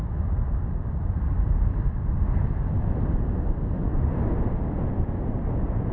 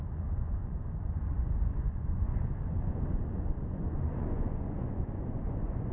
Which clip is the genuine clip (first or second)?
first